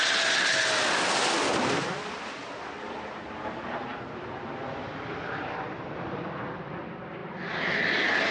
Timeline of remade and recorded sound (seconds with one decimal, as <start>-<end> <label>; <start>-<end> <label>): 0.0-8.3 recorded